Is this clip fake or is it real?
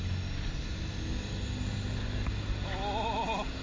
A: real